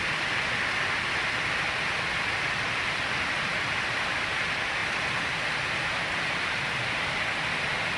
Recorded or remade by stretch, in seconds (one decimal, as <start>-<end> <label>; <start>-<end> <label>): 0.0-8.0 recorded